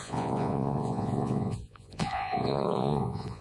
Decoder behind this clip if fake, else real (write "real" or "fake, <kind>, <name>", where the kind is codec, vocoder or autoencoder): fake, vocoder, Vocos